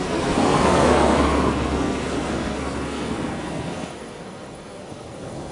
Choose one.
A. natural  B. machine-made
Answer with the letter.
B